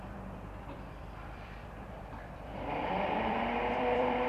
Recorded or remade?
remade